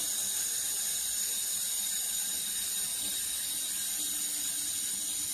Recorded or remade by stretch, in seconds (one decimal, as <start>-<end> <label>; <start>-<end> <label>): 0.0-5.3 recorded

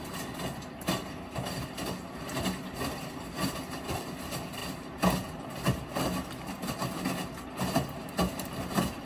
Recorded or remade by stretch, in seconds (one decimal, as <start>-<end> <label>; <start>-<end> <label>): 0.0-9.1 recorded

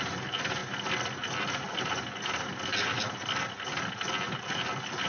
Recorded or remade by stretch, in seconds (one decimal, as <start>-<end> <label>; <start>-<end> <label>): 0.0-5.1 recorded